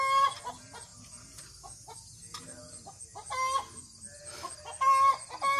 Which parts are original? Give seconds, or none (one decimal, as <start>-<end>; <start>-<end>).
0.0-5.6